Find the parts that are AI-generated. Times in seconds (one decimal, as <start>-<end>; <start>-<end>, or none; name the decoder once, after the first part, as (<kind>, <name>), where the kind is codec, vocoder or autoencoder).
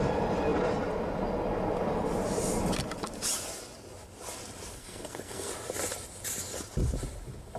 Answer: 4.8-5.5 (codec, SNAC)